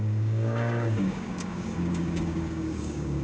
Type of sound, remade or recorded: remade